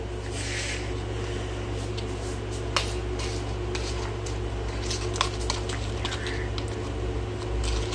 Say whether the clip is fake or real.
real